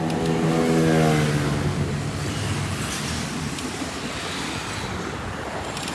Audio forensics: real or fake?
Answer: real